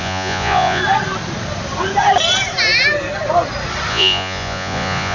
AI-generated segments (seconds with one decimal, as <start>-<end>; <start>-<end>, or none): 0.0-0.8; 3.9-5.1